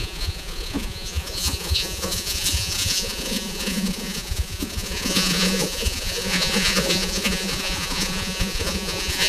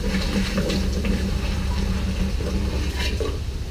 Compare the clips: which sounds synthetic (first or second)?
first